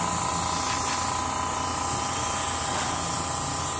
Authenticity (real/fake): real